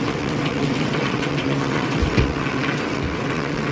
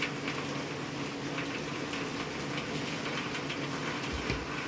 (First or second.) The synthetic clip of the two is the first